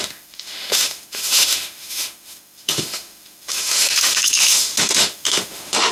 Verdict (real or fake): fake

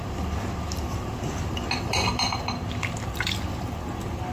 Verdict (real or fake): real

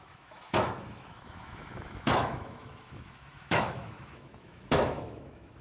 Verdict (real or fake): fake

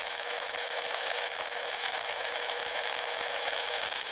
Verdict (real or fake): fake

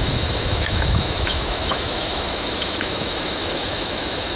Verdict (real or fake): fake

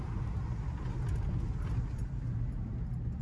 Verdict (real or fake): real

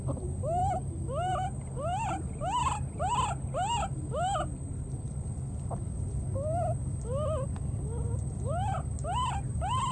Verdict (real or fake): real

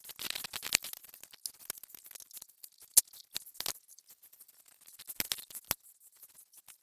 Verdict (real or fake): real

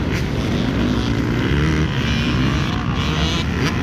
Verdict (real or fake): real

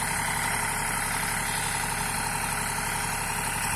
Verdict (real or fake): real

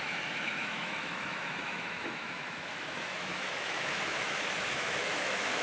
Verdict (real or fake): fake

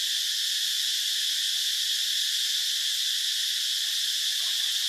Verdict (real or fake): real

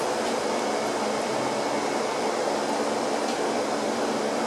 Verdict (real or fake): real